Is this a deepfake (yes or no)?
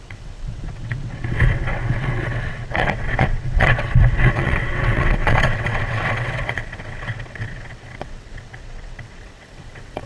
yes